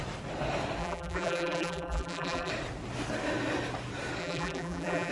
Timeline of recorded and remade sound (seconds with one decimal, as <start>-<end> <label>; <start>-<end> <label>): 0.0-0.8 recorded; 0.8-2.5 remade; 2.5-4.2 recorded; 4.2-5.1 remade